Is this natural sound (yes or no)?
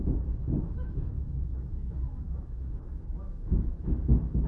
no